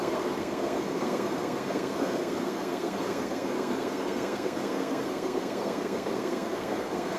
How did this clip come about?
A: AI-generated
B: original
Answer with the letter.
A